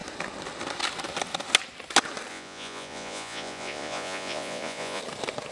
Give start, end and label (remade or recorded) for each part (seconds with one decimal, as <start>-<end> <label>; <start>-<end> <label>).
0.0-2.3 recorded; 2.3-5.0 remade; 5.0-5.5 recorded